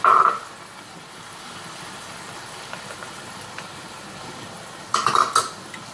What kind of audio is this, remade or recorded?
recorded